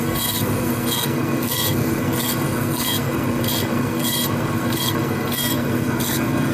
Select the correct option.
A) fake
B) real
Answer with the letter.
A